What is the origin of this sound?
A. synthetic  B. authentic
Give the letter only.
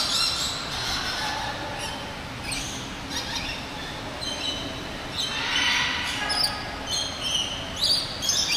B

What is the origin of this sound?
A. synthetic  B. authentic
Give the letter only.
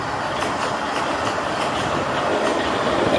B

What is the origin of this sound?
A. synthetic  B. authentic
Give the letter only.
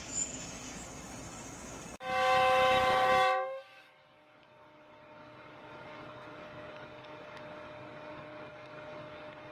A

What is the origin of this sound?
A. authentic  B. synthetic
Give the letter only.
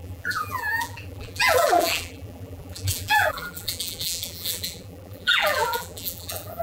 B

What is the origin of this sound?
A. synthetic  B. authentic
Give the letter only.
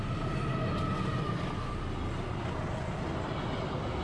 B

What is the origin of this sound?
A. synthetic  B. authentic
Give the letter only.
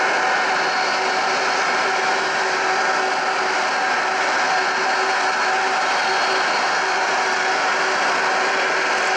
B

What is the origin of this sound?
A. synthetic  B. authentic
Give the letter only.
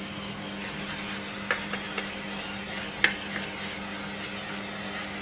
B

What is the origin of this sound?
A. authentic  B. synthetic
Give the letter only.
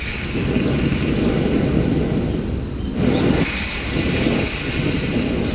A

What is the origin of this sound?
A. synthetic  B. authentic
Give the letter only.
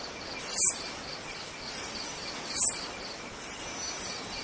B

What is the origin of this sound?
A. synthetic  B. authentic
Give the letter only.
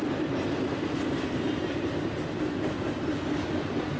B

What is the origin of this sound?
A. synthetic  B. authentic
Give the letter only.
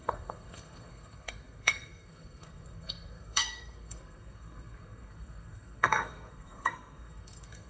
A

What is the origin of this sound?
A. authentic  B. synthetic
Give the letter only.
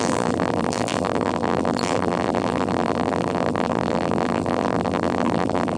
B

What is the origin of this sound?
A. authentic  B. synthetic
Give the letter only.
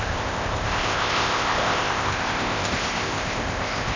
B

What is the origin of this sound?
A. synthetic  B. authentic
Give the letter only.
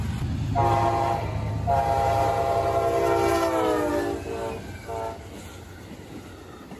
B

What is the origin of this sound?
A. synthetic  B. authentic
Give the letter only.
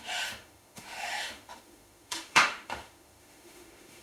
A